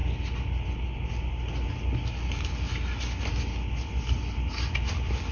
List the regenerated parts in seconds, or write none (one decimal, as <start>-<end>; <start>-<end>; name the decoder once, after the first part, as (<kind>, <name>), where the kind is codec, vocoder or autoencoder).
none